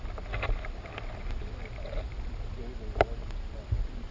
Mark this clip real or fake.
real